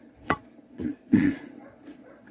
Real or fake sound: fake